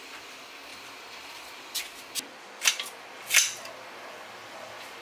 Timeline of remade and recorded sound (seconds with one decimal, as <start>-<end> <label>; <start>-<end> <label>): 0.0-0.7 recorded; 0.7-1.8 remade; 1.8-5.0 recorded